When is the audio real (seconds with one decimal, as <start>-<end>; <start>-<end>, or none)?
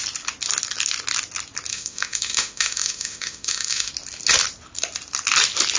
0.0-1.7; 3.9-5.8